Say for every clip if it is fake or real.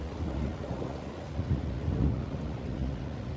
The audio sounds fake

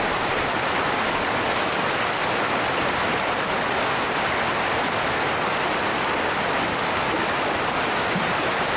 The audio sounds real